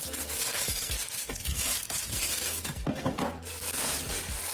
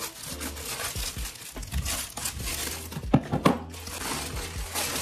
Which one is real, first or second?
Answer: second